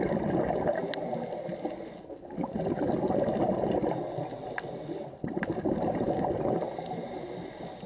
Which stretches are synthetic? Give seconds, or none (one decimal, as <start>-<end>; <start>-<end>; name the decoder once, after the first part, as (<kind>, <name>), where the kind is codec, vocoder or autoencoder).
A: none